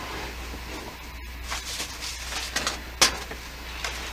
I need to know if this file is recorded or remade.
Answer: recorded